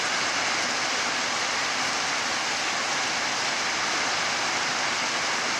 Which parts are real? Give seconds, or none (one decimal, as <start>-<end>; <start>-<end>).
0.0-5.6